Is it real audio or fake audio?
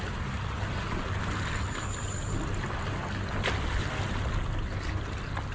real